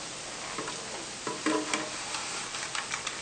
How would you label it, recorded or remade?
recorded